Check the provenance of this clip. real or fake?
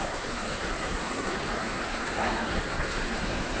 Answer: fake